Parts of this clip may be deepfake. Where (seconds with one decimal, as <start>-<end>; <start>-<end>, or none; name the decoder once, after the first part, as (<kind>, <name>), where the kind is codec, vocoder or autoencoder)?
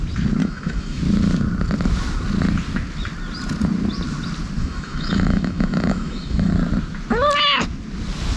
0.4-1.0 (autoencoder, DAC-VAE); 4.6-6.5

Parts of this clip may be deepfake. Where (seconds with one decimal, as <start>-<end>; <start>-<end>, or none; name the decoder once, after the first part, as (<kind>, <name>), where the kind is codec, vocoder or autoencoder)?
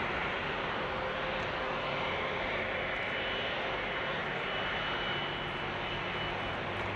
none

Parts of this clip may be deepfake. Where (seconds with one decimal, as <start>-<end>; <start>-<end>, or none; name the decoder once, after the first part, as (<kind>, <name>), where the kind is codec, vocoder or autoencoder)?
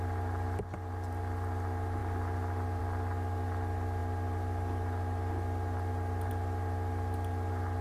none